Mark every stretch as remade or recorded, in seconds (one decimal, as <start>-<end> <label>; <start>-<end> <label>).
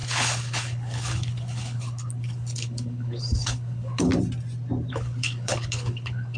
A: 0.0-4.1 remade; 4.1-4.9 recorded; 4.9-6.4 remade